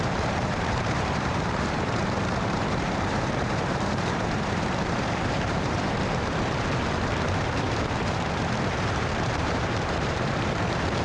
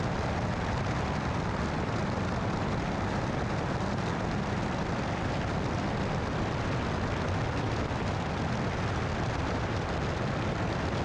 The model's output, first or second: first